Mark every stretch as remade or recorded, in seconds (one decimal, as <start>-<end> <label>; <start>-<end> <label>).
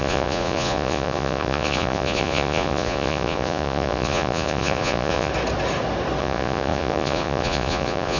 0.0-5.3 remade; 5.3-6.2 recorded; 6.2-8.2 remade